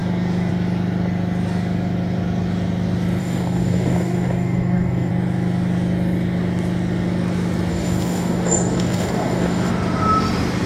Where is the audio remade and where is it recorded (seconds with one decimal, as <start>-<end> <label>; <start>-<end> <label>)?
0.0-3.2 recorded; 3.2-5.1 remade; 5.1-7.7 recorded; 7.7-9.7 remade; 9.7-10.7 recorded